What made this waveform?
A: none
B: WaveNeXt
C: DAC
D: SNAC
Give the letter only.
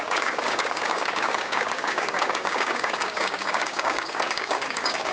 C